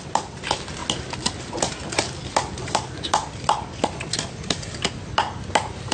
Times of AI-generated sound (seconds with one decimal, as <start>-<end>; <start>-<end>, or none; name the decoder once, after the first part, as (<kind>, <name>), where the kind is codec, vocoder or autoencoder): none